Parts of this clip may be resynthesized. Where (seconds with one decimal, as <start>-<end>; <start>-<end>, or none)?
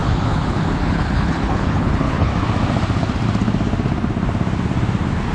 0.0-2.3